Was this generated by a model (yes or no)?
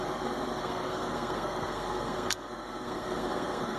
yes